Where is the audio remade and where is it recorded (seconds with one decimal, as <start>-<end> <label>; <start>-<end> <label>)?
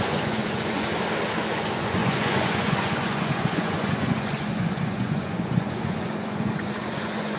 0.0-0.9 remade; 0.9-1.5 recorded; 1.5-7.4 remade